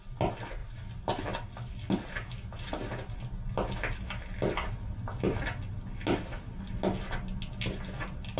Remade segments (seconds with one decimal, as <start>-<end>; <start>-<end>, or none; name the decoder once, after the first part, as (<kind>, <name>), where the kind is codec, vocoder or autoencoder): none